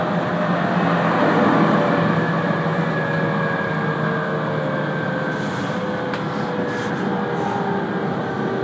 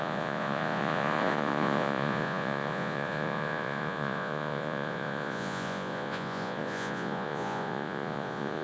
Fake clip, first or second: second